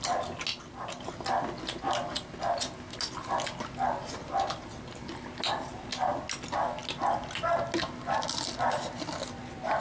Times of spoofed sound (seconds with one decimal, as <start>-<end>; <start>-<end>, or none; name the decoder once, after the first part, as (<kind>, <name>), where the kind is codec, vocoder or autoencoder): none